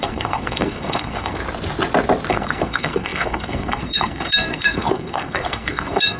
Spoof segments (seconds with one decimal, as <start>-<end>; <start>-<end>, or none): 0.0-1.4; 2.3-6.2